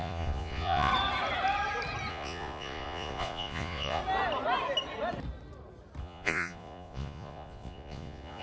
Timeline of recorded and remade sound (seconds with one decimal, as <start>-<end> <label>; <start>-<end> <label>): 0.0-0.9 remade; 0.9-2.1 recorded; 2.1-4.0 remade; 4.0-6.0 recorded; 6.0-8.4 remade